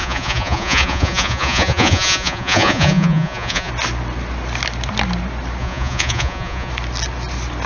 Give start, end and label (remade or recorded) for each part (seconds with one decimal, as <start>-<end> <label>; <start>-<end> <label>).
0.0-3.7 remade; 3.7-5.6 recorded; 5.6-6.7 remade; 6.7-7.7 recorded